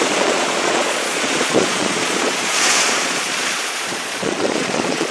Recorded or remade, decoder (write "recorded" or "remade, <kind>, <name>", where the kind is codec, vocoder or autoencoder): remade, vocoder, Vocos